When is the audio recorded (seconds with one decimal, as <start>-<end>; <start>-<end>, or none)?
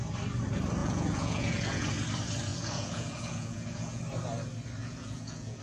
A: 0.0-0.8; 1.9-2.5; 4.0-4.8